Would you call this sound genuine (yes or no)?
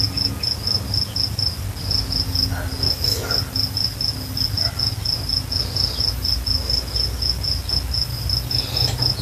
yes